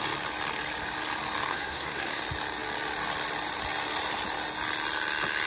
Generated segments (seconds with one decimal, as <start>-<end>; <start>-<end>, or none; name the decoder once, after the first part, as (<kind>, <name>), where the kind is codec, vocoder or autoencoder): 1.5-2.2 (codec, SNAC)